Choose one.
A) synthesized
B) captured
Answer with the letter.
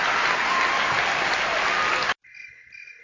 B